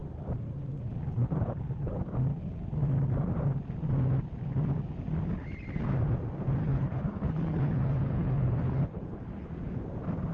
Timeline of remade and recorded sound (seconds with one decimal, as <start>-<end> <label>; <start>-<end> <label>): 0.0-1.2 recorded; 1.2-2.0 remade; 2.0-6.6 recorded; 6.6-9.5 remade; 9.5-10.3 recorded

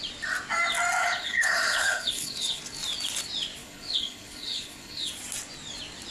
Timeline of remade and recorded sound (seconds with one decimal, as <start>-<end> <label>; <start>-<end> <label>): 0.0-1.0 recorded; 1.0-2.6 remade; 2.6-3.6 recorded; 3.6-5.1 remade; 5.1-6.1 recorded

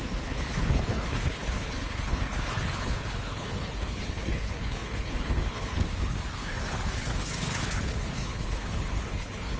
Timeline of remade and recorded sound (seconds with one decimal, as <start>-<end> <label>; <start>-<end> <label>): 0.0-9.6 remade

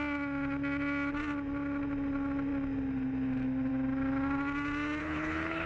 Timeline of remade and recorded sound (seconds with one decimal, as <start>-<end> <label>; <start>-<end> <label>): 0.0-5.0 recorded; 5.0-5.7 remade

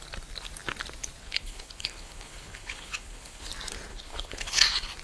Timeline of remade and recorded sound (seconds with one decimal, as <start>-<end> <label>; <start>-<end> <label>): 0.0-1.2 recorded; 1.2-3.5 remade; 3.5-3.9 recorded; 3.9-4.6 remade; 4.6-5.0 recorded